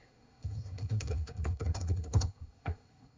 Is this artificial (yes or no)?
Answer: yes